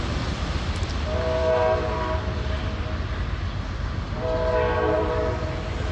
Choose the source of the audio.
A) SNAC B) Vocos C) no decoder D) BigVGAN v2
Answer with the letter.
C